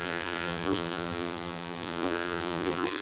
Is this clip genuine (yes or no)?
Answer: no